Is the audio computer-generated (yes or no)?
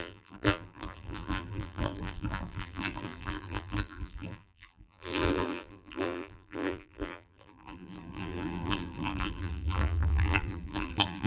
yes